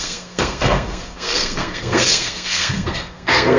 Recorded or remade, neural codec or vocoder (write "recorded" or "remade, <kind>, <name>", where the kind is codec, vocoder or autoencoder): remade, codec, SNAC